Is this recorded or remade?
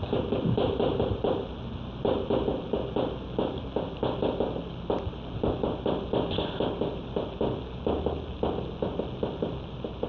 recorded